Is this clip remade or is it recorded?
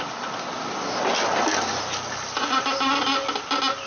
recorded